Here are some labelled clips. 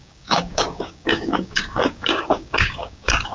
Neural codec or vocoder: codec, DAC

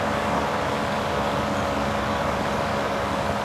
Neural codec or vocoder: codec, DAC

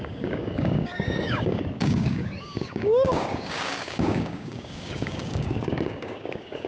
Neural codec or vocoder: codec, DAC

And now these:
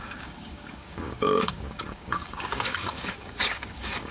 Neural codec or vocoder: codec, DAC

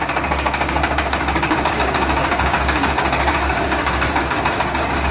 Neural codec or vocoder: codec, DAC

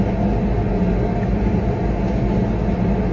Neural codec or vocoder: none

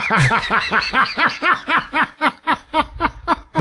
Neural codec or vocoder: codec, DAC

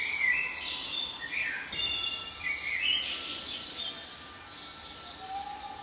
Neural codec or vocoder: none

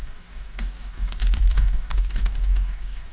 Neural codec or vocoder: codec, DAC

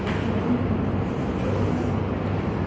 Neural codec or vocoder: none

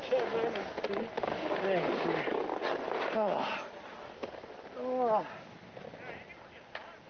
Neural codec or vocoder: none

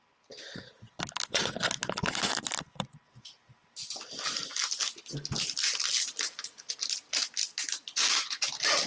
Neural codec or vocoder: none